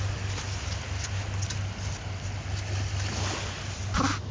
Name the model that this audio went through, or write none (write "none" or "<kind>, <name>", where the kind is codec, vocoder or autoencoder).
none